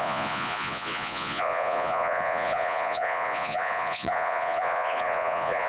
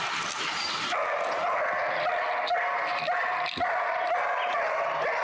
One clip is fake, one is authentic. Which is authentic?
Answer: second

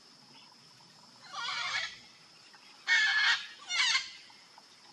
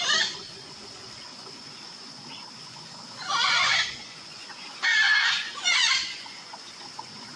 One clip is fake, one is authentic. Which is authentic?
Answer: first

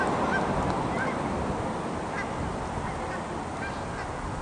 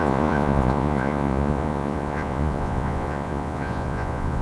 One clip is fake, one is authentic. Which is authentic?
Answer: first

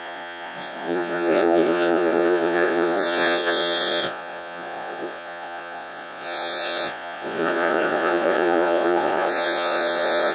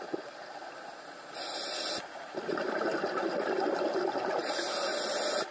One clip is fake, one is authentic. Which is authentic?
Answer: second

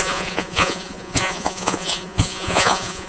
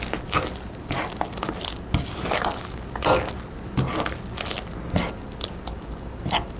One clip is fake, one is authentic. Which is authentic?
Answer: second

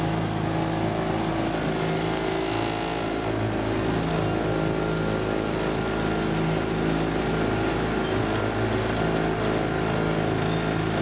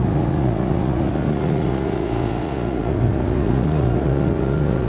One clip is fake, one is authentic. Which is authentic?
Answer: first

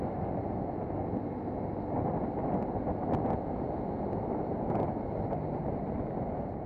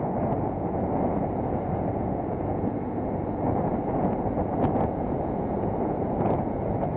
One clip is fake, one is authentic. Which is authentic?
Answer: first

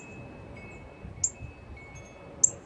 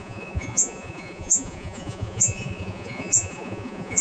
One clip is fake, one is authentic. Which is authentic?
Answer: first